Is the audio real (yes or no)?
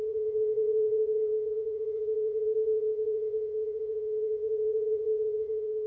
no